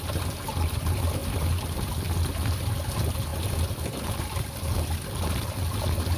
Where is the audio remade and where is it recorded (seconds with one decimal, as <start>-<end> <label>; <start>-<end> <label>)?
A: 0.0-6.2 recorded